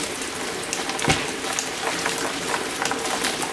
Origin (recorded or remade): recorded